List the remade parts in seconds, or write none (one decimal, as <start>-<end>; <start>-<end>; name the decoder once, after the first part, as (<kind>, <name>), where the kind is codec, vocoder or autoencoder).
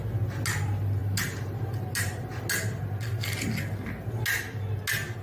none